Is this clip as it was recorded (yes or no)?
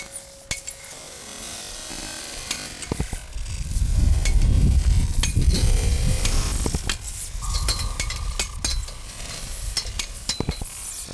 yes